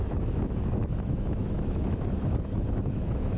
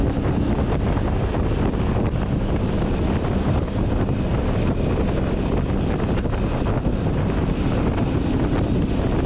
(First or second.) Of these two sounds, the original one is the second